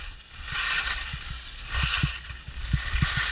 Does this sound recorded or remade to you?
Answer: recorded